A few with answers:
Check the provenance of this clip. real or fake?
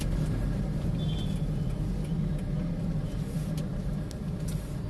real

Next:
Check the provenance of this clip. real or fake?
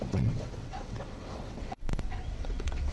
fake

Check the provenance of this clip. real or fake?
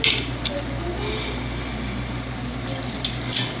real